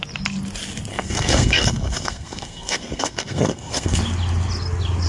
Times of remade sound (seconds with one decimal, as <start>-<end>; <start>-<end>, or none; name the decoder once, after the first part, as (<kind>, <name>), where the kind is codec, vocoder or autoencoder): 0.9-4.0 (codec, SNAC)